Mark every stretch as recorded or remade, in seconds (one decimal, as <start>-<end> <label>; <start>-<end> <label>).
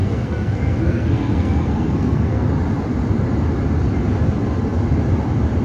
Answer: 0.0-2.5 remade; 2.5-5.6 recorded